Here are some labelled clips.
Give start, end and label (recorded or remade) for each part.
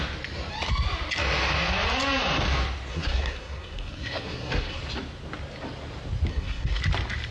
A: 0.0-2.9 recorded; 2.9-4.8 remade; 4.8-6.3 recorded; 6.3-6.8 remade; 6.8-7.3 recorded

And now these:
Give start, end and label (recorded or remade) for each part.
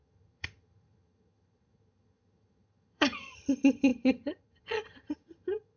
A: 0.0-5.8 remade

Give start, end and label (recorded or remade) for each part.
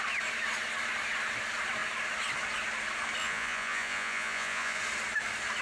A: 0.0-3.2 recorded; 3.2-4.8 remade; 4.8-5.6 recorded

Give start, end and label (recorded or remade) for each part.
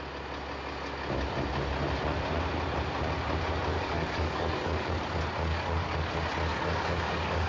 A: 0.0-3.7 recorded; 3.7-4.9 remade; 4.9-5.5 recorded; 5.5-6.1 remade; 6.1-6.5 recorded; 6.5-7.5 remade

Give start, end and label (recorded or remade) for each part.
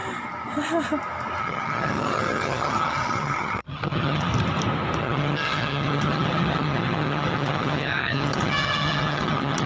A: 0.0-1.4 recorded; 1.4-4.3 remade; 4.3-5.0 recorded; 5.0-9.7 remade